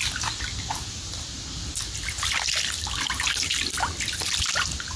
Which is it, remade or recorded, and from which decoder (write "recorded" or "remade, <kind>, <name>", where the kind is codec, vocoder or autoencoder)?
remade, vocoder, BigVGAN v2